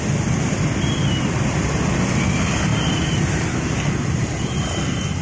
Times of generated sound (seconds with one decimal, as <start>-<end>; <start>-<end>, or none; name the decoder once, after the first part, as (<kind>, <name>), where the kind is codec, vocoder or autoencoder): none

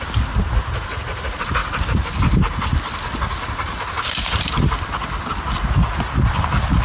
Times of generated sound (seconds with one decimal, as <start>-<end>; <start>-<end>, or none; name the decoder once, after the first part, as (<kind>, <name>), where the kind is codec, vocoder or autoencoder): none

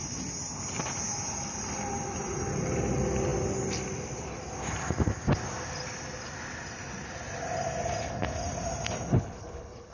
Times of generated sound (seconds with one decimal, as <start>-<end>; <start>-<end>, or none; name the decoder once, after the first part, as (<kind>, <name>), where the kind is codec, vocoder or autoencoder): 9.1-9.9 (codec, HILCodec)

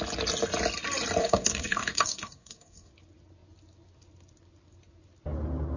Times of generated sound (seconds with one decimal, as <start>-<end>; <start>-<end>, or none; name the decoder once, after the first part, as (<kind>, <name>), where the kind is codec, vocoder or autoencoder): 1.2-2.9 (codec, DAC)

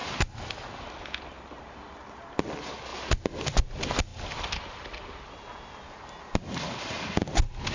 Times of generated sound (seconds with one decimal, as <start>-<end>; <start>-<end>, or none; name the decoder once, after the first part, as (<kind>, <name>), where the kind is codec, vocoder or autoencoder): none